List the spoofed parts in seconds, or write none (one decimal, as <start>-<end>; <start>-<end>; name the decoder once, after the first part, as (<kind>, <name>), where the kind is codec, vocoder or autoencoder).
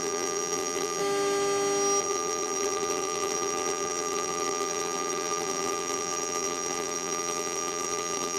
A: 0.0-1.0 (vocoder, BigVGAN v2); 2.0-8.4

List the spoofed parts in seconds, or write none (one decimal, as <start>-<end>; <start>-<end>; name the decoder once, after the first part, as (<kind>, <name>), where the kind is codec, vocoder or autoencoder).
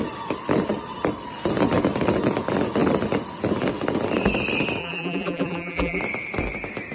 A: 4.8-6.0 (vocoder, BigVGAN v2)